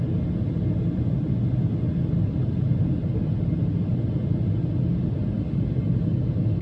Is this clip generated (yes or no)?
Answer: no